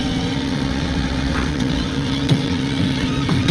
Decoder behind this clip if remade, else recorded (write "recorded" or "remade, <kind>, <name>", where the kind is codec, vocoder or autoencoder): remade, vocoder, WaveNeXt